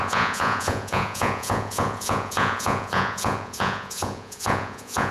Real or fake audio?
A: fake